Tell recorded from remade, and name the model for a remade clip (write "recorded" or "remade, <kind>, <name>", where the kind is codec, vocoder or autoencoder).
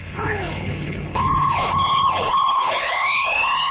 remade, codec, HILCodec